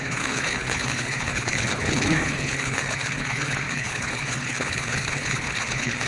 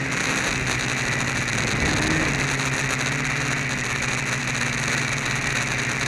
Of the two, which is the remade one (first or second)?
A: first